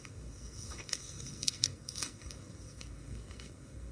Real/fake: fake